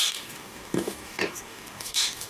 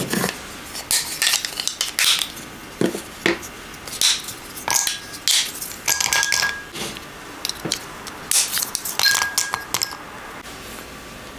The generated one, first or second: first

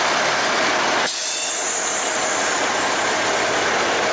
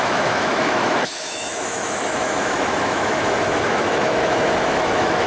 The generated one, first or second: second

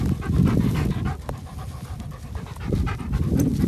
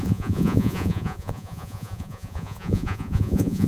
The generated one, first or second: second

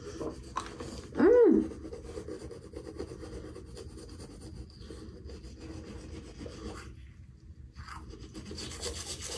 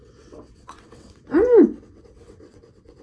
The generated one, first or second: second